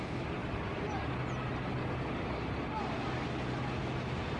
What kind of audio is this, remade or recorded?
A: recorded